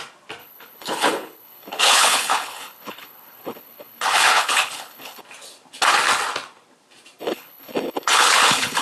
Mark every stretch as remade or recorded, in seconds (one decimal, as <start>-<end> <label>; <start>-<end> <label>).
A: 0.0-0.4 recorded; 0.4-5.2 remade; 5.2-7.2 recorded; 7.2-8.8 remade